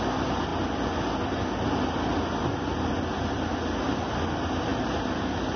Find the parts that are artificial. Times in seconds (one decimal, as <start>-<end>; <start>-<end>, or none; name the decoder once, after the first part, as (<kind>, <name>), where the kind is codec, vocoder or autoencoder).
none

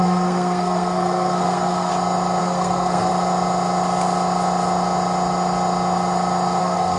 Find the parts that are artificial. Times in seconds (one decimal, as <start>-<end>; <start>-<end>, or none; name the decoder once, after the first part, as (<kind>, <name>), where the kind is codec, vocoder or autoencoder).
0.0-1.9 (codec, SNAC); 2.4-3.1; 6.6-7.0